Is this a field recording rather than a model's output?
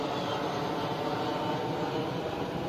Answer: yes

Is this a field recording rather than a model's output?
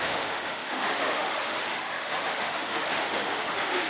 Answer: no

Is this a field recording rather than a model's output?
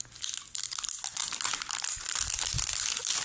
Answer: yes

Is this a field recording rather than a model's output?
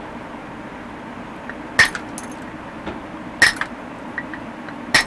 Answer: yes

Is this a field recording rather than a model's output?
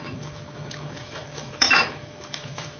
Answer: no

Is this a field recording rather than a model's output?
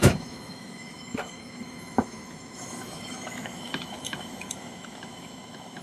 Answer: no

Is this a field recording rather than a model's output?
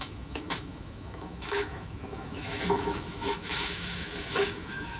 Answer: no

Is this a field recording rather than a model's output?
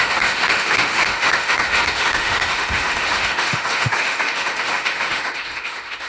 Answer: no